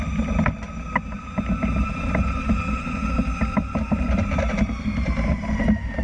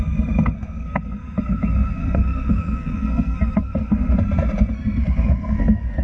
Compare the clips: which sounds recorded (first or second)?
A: first